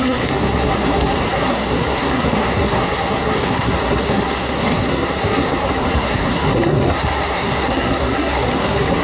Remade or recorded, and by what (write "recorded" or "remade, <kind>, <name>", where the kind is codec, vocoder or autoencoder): remade, codec, SNAC